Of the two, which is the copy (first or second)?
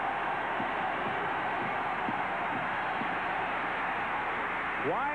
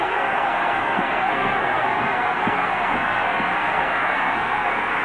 second